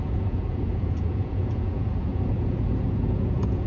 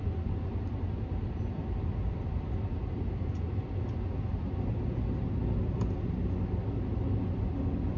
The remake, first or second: first